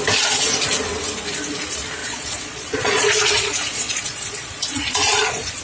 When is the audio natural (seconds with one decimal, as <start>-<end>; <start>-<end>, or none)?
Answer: 0.0-2.0